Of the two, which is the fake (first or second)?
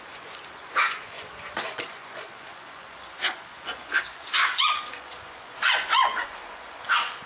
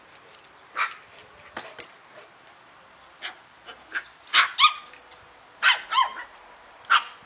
first